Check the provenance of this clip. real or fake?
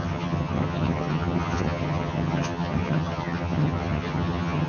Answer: fake